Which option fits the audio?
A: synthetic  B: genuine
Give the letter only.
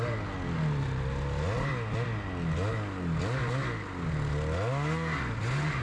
B